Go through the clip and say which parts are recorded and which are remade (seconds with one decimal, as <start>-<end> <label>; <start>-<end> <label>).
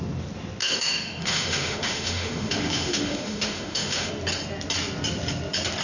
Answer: 0.0-0.6 recorded; 0.6-4.1 remade; 4.1-5.8 recorded